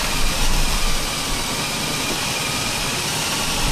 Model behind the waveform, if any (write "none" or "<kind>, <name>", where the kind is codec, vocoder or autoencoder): none